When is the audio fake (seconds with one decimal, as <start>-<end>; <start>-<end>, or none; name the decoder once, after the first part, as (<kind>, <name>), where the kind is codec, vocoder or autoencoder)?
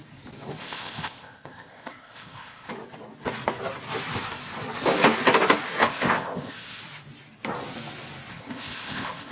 0.6-2.7 (codec, ZipCodec); 5.8-6.8; 8.3-9.3